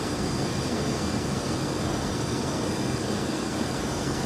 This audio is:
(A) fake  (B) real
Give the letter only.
A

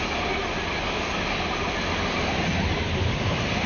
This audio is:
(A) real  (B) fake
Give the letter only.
A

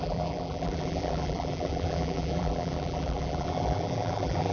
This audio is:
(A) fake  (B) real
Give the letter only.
A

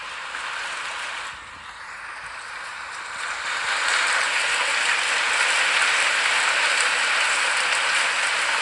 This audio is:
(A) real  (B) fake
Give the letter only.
A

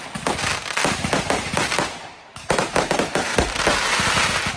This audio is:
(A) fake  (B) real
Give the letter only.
B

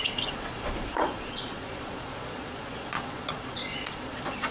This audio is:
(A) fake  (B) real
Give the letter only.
A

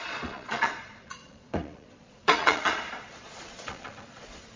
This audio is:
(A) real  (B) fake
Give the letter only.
B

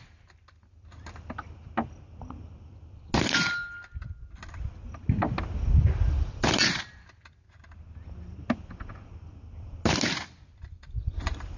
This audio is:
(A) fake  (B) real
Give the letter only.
B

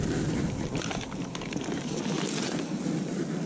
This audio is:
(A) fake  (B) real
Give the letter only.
B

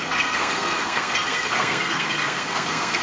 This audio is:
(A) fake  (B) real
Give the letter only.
A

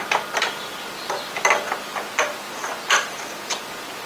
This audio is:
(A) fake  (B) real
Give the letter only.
B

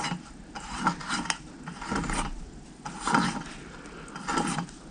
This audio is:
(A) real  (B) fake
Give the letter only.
A